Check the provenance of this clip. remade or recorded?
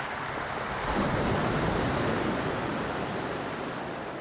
recorded